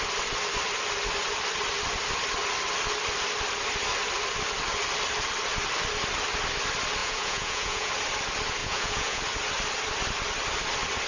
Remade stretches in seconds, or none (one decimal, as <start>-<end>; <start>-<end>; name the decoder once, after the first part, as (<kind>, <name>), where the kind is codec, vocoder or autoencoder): 7.0-7.9 (vocoder, Vocos); 8.6-9.2